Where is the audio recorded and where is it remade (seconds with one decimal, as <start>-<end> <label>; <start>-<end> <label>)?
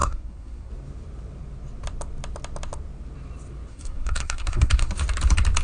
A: 0.0-0.7 remade; 0.7-3.7 recorded; 3.7-4.9 remade; 4.9-5.6 recorded